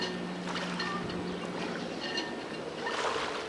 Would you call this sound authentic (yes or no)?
yes